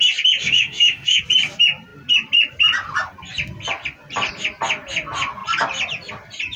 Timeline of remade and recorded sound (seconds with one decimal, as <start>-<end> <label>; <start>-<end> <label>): 0.0-0.4 recorded; 0.4-1.2 remade; 1.2-6.6 recorded